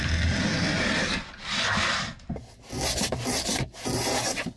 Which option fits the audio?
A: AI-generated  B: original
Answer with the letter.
B